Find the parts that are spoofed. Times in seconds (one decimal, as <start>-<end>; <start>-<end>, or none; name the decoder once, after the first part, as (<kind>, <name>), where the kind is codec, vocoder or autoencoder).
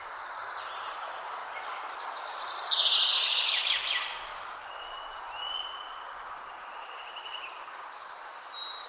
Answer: none